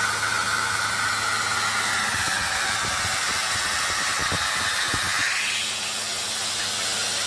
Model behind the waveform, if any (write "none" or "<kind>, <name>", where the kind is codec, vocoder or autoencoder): none